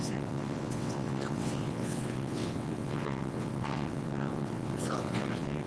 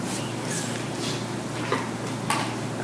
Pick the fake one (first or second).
first